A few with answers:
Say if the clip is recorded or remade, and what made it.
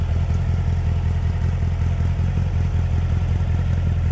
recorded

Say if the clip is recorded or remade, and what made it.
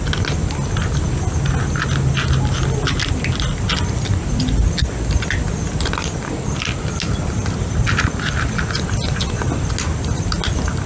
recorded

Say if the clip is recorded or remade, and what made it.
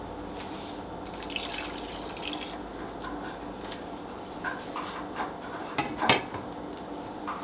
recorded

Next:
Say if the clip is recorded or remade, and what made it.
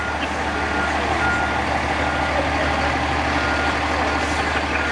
recorded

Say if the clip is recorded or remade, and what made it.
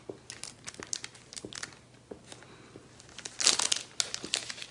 recorded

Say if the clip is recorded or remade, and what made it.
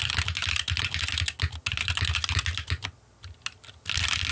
recorded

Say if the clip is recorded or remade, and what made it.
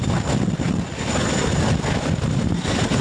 recorded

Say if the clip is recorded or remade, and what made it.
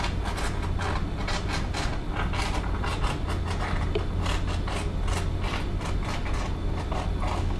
recorded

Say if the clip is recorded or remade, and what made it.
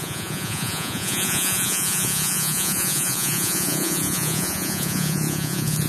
remade, vocoder, Vocos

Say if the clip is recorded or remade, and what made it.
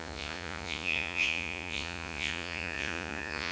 remade, vocoder, Vocos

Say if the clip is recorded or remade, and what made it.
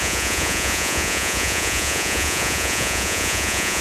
remade, vocoder, Vocos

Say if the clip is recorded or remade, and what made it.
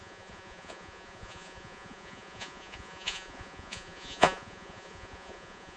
remade, vocoder, Vocos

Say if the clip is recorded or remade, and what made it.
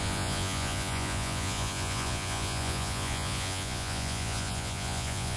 remade, vocoder, Vocos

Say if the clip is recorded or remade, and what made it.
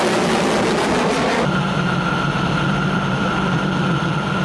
recorded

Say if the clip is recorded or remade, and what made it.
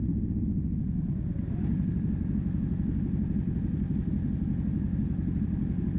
recorded